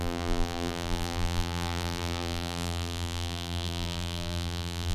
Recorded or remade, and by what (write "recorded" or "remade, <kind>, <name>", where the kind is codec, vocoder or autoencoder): remade, vocoder, BigVGAN v2